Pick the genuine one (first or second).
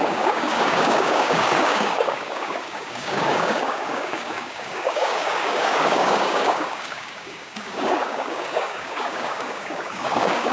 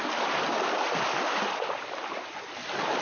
second